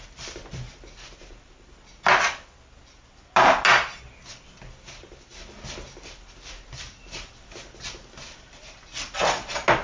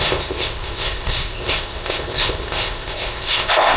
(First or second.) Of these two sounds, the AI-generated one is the second